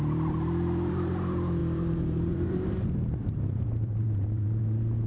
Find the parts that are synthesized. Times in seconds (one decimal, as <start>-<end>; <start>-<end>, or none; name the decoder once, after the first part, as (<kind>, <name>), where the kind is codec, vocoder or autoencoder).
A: 0.0-5.1 (vocoder, BigVGAN v2)